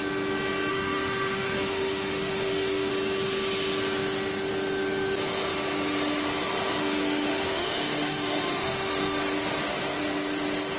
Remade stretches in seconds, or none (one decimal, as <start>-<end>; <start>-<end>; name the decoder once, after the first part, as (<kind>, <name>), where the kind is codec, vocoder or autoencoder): 0.7-2.9 (autoencoder, DAC-VAE); 6.8-9.2